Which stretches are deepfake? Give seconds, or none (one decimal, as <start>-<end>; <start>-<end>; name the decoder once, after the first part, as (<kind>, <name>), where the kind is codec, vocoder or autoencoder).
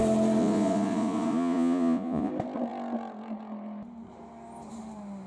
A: 0.4-2.3 (vocoder, Vocos)